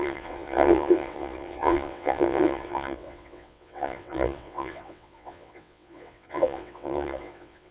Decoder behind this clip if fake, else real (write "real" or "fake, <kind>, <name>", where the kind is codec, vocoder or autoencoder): fake, vocoder, WaveNeXt